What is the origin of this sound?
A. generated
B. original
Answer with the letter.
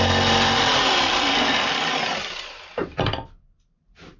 B